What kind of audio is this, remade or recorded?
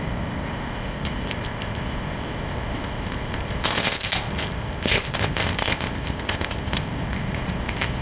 remade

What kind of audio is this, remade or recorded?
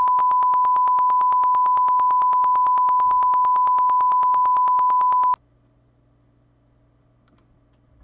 recorded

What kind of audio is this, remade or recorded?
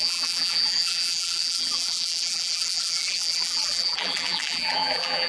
remade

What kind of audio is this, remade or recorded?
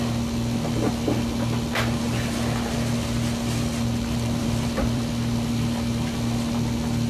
remade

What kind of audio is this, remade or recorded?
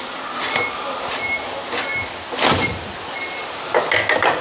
recorded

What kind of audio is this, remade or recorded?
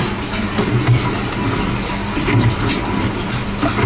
recorded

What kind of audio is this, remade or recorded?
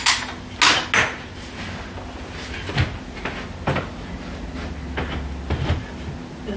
recorded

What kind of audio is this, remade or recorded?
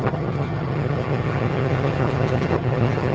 remade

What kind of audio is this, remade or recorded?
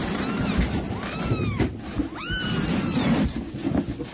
recorded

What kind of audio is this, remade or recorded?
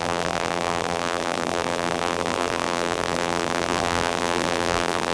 remade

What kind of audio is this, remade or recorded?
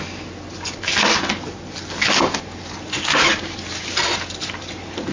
recorded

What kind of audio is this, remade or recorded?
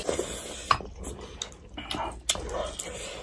recorded